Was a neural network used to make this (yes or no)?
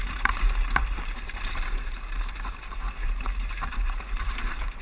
yes